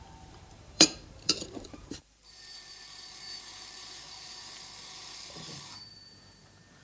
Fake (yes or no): yes